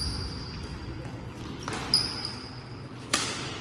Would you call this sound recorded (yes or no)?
yes